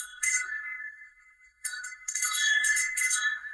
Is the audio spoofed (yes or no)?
yes